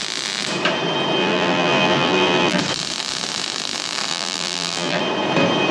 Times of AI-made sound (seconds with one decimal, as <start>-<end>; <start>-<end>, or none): 1.2-2.6; 4.1-5.0